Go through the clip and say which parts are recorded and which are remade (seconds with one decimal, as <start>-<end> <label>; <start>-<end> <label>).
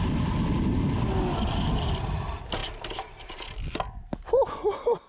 0.0-5.1 recorded